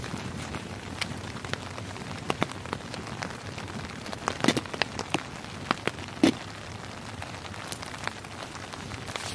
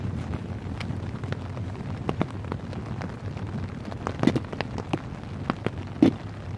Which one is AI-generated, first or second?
first